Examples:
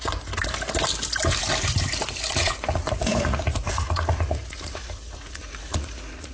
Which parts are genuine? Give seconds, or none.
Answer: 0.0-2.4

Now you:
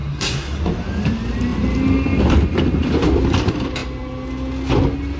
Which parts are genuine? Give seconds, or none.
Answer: 0.6-5.2

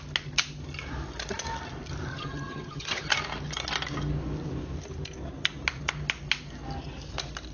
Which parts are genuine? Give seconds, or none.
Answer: 0.0-2.1; 3.1-7.5